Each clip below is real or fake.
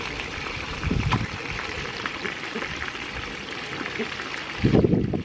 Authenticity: fake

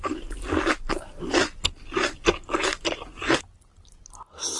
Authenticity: real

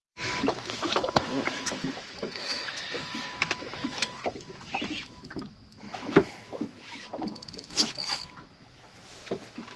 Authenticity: fake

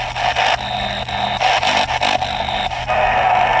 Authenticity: real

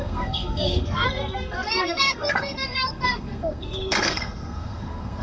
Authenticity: fake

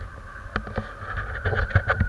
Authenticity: real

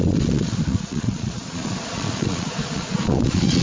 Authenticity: fake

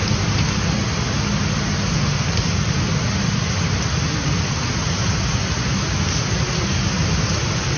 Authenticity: real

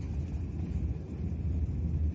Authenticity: real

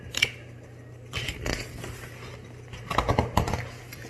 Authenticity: real